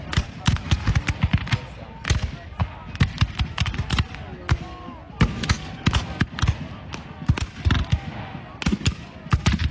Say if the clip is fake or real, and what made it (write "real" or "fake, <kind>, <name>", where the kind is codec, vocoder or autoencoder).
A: real